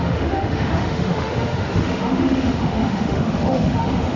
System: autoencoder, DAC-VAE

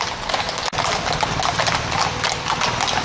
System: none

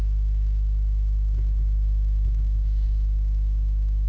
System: autoencoder, DAC-VAE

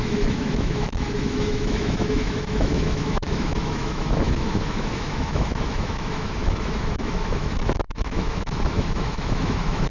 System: autoencoder, DAC-VAE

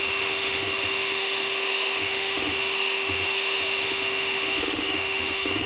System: autoencoder, DAC-VAE